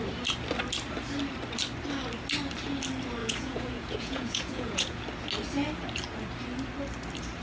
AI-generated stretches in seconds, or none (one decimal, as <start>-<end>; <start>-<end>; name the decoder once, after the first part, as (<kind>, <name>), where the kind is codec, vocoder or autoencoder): 3.2-5.0 (vocoder, Vocos)